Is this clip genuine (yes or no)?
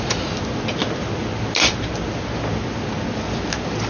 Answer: yes